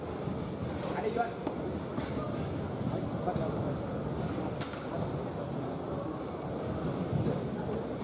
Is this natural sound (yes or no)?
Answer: yes